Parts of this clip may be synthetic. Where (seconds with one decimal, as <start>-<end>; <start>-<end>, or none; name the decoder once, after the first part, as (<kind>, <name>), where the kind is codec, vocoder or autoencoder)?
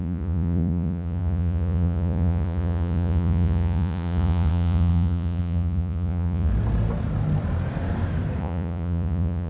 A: 0.0-6.5 (vocoder, Vocos); 8.4-9.5